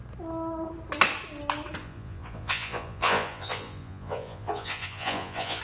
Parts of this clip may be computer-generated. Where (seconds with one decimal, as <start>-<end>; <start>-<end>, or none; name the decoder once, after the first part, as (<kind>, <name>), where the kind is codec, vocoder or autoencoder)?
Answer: 1.8-5.6 (vocoder, Vocos)